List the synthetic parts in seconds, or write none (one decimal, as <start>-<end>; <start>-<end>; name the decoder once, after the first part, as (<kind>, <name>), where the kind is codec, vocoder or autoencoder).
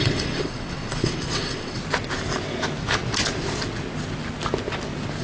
0.0-1.8 (vocoder, WaveNeXt)